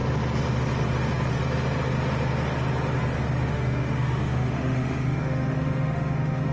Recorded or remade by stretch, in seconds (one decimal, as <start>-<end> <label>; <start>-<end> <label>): 0.0-3.5 recorded; 3.5-6.5 remade

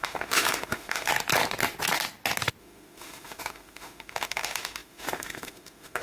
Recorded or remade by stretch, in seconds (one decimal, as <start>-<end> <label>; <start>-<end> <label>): 0.0-1.1 remade; 1.1-2.6 recorded; 2.6-6.0 remade

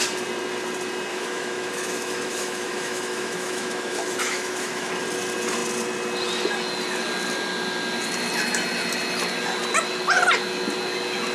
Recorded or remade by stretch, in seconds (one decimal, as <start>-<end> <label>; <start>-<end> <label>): 0.0-1.1 recorded; 1.1-4.9 remade; 4.9-11.3 recorded

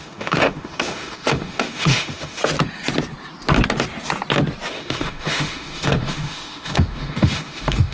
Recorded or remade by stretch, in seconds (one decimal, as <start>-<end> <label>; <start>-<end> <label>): 0.0-2.4 remade; 2.4-4.7 recorded; 4.7-7.9 remade

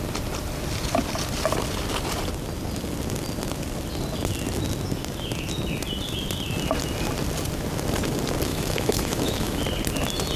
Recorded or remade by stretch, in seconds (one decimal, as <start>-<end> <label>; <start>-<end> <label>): 0.0-8.5 recorded; 8.5-9.6 remade; 9.6-10.4 recorded

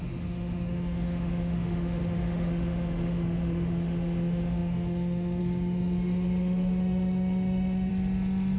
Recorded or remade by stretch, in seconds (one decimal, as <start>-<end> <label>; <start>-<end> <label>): 0.0-7.9 remade; 7.9-8.6 recorded

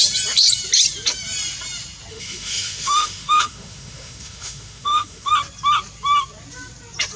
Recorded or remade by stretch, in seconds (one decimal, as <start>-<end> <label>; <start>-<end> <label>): 0.0-2.1 recorded; 2.1-5.3 remade; 5.3-7.2 recorded

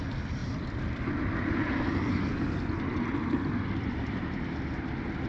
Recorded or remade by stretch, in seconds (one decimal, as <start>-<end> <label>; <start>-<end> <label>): 0.0-5.3 recorded